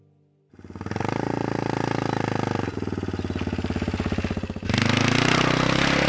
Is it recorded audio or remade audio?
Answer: recorded